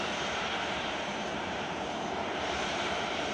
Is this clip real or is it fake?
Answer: fake